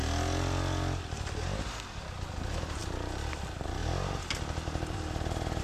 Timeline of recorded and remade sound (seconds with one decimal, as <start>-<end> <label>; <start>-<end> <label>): 0.0-5.6 recorded